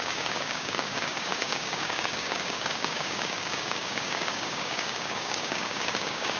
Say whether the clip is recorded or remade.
remade